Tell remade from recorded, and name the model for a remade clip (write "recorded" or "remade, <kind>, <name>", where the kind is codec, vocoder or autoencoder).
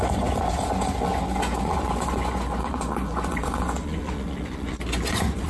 remade, vocoder, Vocos